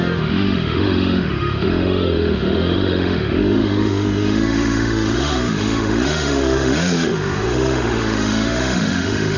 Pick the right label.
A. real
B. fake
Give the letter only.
B